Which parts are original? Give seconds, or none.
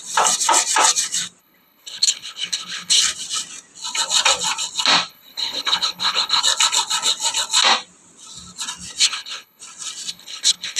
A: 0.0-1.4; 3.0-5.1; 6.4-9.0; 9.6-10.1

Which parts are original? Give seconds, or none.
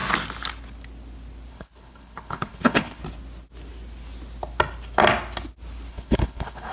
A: 0.0-1.5; 3.0-5.9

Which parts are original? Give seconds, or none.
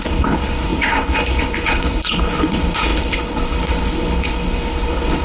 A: none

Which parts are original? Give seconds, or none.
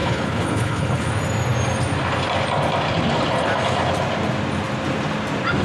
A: 1.1-5.6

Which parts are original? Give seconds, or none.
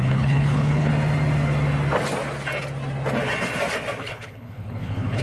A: 0.9-4.0